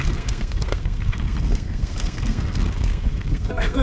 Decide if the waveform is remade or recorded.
remade